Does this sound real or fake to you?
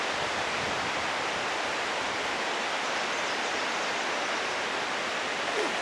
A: real